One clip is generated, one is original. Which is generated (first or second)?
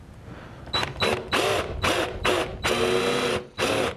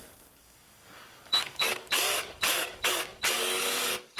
second